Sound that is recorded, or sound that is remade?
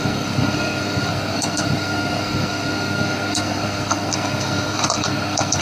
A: remade